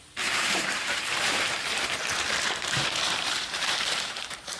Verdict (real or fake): fake